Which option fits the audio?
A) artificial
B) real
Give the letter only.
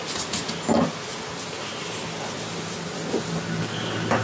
B